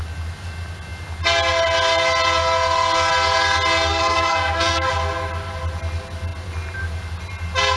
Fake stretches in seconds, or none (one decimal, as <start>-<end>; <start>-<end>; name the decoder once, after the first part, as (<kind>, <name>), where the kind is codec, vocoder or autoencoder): 3.9-4.9 (codec, SNAC)